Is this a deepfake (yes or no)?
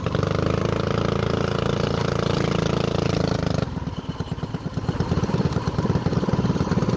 no